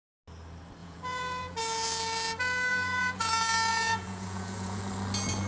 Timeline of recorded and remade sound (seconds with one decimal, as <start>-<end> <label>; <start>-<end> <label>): 0.0-0.8 recorded; 0.8-1.6 remade; 1.6-2.7 recorded; 2.7-3.3 remade; 3.3-3.7 recorded; 3.7-4.8 remade; 4.8-5.5 recorded